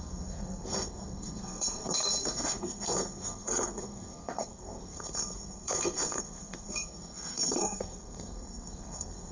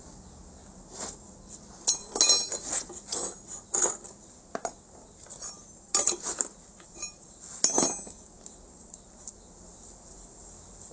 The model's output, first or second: first